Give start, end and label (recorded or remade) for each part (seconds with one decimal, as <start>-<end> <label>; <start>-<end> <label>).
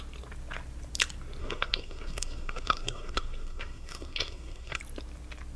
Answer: 0.0-1.4 recorded; 1.4-4.8 remade; 4.8-5.6 recorded